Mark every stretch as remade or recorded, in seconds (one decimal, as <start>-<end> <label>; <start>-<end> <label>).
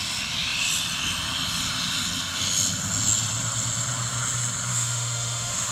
0.0-4.7 recorded; 4.7-5.7 remade